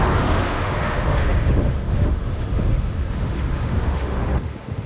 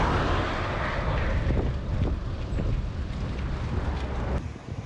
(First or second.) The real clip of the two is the second